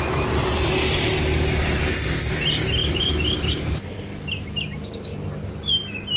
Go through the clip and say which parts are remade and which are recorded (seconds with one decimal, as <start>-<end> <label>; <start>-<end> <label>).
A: 0.0-2.8 recorded; 2.8-3.5 remade; 3.5-6.2 recorded